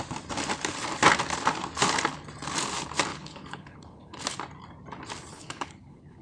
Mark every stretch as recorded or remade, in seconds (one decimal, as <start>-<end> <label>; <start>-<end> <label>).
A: 0.0-3.1 recorded; 3.1-4.2 remade; 4.2-5.3 recorded; 5.3-6.2 remade